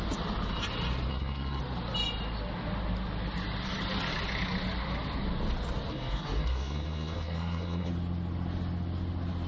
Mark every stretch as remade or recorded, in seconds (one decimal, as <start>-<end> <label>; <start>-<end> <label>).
0.0-1.1 recorded; 1.1-1.6 remade; 1.6-5.9 recorded; 5.9-7.9 remade; 7.9-9.5 recorded